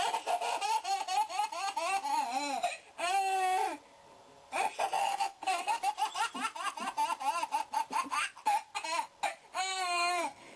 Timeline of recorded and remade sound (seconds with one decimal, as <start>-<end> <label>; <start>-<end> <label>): 0.0-5.0 recorded; 5.0-5.9 remade; 5.9-9.6 recorded; 9.6-10.6 remade